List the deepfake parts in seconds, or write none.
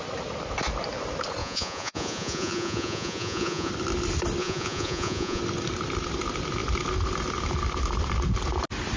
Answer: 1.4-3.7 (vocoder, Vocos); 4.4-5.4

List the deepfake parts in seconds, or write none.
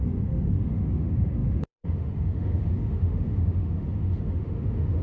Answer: 0.0-5.0 (autoencoder, DAC-VAE)